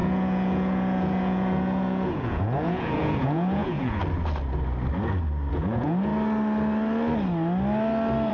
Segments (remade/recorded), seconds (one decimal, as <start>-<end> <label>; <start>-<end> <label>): 0.0-4.0 remade; 4.0-5.5 recorded; 5.5-6.1 remade; 6.1-8.3 recorded